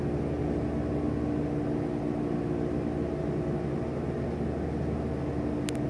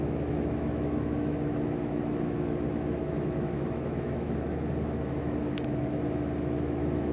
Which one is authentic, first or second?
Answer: first